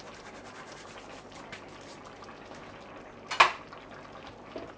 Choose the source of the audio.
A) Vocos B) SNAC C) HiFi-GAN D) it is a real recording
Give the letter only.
D